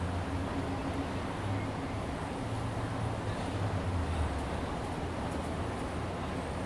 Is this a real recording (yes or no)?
yes